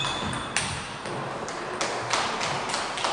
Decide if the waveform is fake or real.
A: real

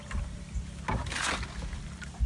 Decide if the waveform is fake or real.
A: real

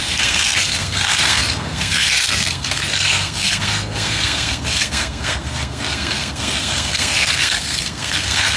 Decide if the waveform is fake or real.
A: fake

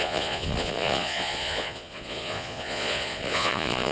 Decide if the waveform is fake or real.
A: fake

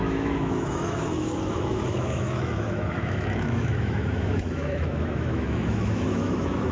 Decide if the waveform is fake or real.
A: fake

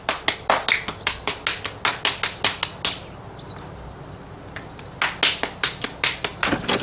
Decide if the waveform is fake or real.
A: real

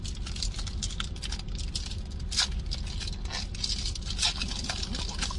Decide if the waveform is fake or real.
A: real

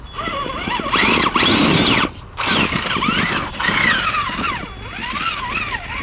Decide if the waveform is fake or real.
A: real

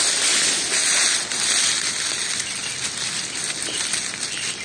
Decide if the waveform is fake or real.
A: real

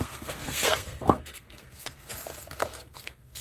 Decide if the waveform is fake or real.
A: fake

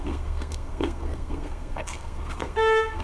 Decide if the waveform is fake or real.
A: fake